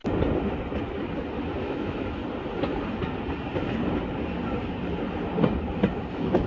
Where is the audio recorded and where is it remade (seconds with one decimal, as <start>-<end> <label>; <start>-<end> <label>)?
0.0-1.6 recorded; 1.6-2.2 remade; 2.2-6.1 recorded; 6.1-6.5 remade